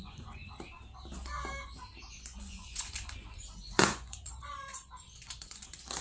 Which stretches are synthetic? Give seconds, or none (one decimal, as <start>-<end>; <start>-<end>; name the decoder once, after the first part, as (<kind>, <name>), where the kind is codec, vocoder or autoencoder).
0.0-0.4 (vocoder, Vocos); 2.1-6.0